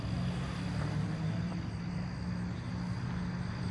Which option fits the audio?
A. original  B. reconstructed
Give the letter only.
A